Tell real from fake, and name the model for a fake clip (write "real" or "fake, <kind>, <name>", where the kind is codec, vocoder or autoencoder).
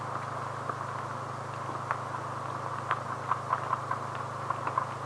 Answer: real